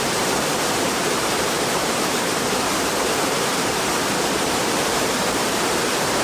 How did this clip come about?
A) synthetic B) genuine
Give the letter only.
A